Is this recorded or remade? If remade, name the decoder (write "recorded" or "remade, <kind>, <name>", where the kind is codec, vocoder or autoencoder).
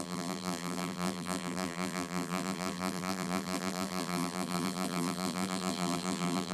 remade, vocoder, BigVGAN v2